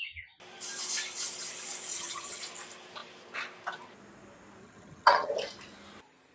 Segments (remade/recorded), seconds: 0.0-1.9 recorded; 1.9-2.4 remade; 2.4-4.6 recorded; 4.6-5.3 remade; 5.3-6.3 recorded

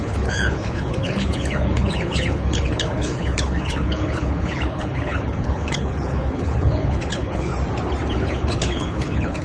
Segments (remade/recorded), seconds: 0.0-7.5 remade; 7.5-8.1 recorded; 8.1-9.4 remade

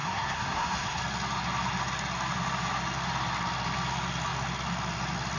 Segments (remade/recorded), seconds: 0.0-1.0 remade; 1.0-5.4 recorded

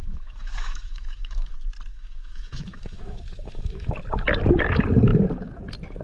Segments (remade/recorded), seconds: 0.0-1.5 remade; 1.5-1.9 recorded; 1.9-3.9 remade; 3.9-6.0 recorded